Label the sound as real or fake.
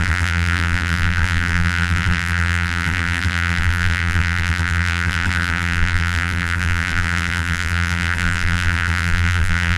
fake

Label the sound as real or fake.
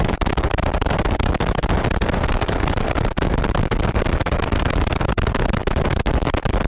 real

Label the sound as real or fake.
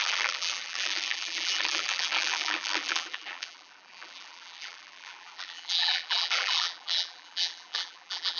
fake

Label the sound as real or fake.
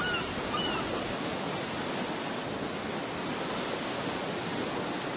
real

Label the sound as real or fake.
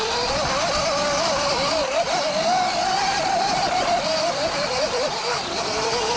fake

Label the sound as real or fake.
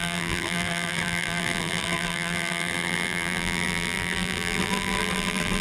fake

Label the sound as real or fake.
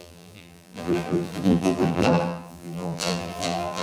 fake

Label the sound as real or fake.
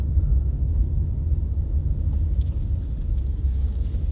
real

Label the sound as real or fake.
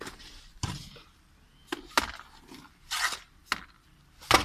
real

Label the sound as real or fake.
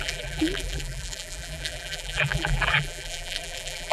fake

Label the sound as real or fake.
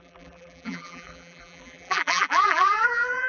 fake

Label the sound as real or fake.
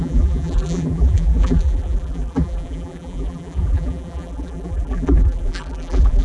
fake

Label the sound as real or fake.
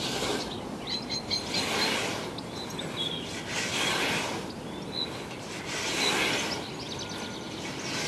real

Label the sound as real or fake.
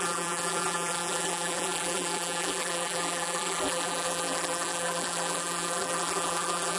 fake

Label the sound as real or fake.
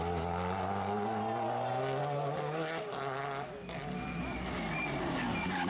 real